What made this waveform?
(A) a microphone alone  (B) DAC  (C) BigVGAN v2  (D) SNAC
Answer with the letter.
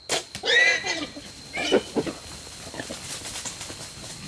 A